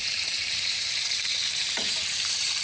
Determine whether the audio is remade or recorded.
remade